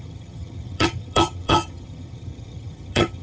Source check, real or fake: fake